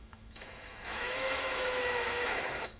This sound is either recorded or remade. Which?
remade